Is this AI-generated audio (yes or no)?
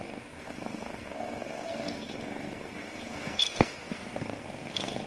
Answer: yes